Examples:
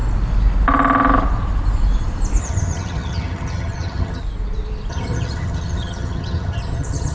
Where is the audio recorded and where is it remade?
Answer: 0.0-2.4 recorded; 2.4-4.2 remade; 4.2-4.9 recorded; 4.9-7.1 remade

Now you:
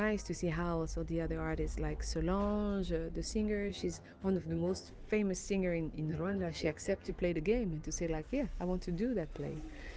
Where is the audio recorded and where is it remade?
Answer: 0.0-3.7 recorded; 3.7-4.9 remade; 4.9-6.1 recorded; 6.1-7.1 remade; 7.1-10.0 recorded

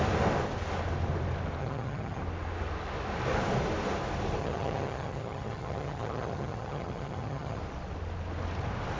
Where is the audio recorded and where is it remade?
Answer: 0.0-1.6 recorded; 1.6-2.2 remade; 2.2-4.4 recorded; 4.4-7.6 remade; 7.6-9.0 recorded

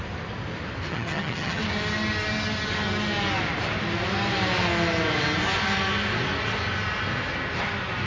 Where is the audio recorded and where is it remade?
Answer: 0.0-0.9 recorded; 0.9-1.6 remade; 1.6-8.1 recorded

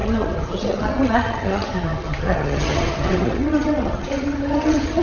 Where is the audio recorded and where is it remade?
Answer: 0.0-5.0 remade